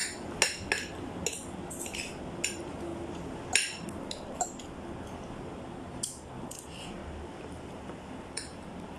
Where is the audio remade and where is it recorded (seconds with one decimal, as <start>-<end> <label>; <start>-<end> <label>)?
0.0-2.5 recorded; 2.5-2.9 remade; 2.9-5.3 recorded; 5.3-7.0 remade; 7.0-8.3 recorded; 8.3-9.0 remade